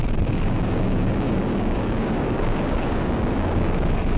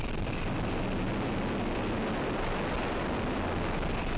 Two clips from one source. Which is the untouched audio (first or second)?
second